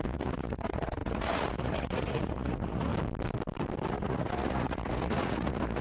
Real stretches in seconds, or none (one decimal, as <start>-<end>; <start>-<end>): 2.9-3.9